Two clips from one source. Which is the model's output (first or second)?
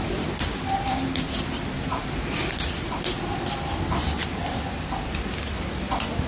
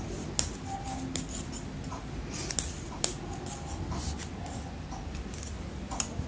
first